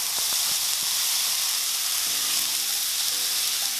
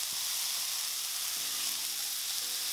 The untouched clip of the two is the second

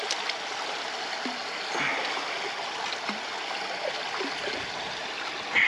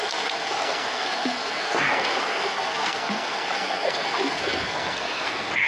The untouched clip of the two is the first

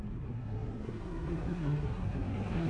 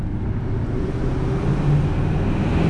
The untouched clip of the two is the second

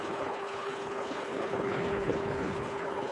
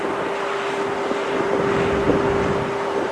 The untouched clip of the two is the second